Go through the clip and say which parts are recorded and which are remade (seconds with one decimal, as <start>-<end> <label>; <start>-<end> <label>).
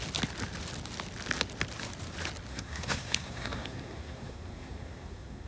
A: 0.0-2.5 recorded; 2.5-5.5 remade